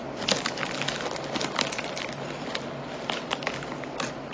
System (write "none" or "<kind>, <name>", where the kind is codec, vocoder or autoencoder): none